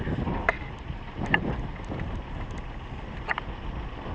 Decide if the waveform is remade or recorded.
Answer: recorded